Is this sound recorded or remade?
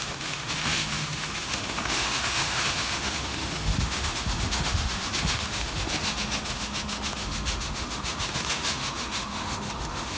remade